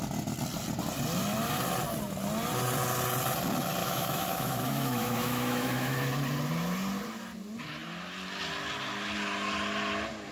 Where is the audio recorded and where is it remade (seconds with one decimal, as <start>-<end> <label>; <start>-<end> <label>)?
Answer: 0.0-3.8 recorded; 3.8-6.1 remade; 6.1-10.3 recorded